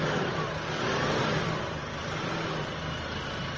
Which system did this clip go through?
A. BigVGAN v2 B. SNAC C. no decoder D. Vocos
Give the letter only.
C